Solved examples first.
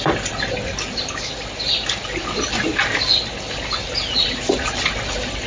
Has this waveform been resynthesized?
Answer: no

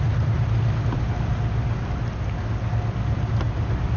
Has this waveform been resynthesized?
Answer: no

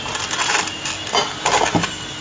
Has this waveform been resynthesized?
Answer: no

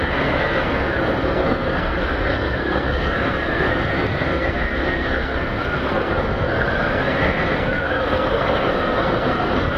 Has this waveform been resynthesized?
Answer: yes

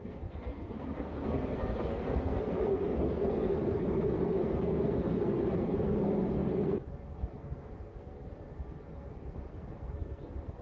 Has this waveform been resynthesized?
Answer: yes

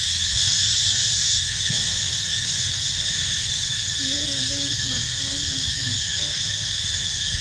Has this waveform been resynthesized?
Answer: yes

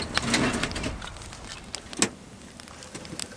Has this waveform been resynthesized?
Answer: no